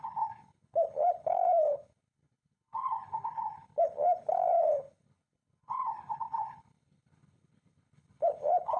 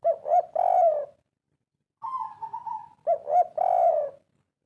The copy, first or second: first